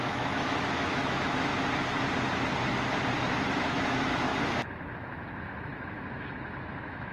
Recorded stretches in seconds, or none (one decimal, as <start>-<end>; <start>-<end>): 1.5-3.5; 4.3-5.4